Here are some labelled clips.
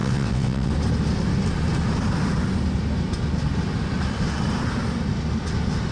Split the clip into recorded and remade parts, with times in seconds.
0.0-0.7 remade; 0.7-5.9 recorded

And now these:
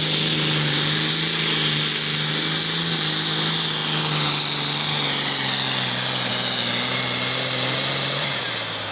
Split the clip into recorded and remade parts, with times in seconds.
0.0-8.9 recorded

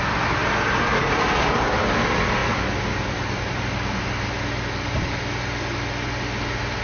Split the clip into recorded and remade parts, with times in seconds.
0.0-6.8 recorded

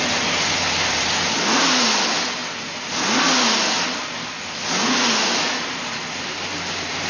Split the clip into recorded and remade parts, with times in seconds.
0.0-7.1 recorded

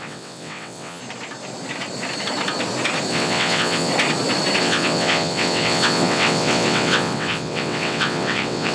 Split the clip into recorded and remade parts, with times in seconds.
0.0-1.0 remade; 1.0-3.1 recorded; 3.1-3.9 remade; 3.9-4.6 recorded; 4.6-8.7 remade